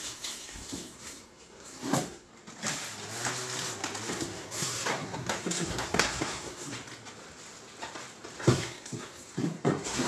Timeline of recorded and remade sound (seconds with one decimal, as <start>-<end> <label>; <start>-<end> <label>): 0.0-2.3 remade; 2.3-4.1 recorded; 4.1-6.8 remade; 6.8-8.4 recorded; 8.4-10.1 remade